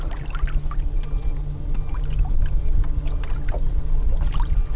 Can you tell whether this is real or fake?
real